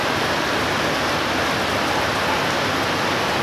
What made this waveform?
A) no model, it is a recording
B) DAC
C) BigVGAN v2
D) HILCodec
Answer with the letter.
A